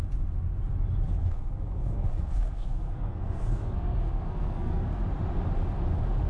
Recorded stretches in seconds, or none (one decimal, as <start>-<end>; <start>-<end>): 0.0-1.2; 5.0-6.3